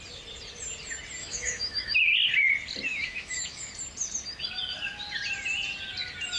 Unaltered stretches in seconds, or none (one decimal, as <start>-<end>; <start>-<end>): 0.0-1.2; 2.0-2.9; 3.7-6.4